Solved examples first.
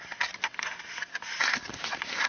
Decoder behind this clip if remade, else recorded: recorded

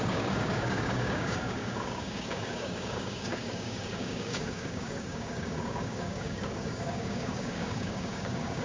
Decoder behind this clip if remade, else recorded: remade, codec, DAC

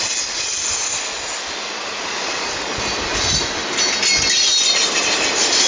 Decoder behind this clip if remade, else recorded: recorded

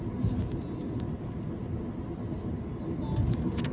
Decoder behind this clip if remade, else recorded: recorded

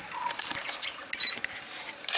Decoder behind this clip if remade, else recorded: recorded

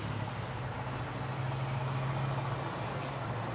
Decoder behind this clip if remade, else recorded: recorded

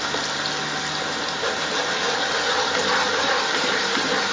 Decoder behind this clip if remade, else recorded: recorded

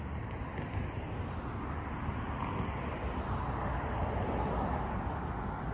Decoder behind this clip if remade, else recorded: recorded